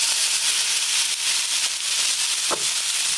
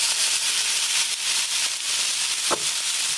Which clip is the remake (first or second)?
second